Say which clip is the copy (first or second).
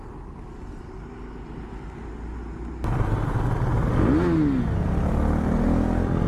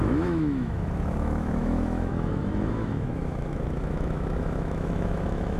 second